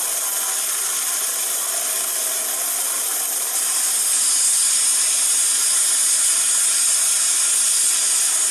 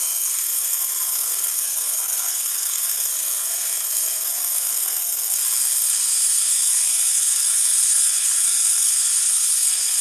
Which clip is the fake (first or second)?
second